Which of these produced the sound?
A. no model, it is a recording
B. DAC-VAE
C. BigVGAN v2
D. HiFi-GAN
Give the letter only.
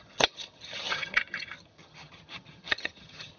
D